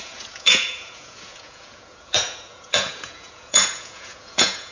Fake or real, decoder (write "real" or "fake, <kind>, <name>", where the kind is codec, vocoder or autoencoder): fake, vocoder, Vocos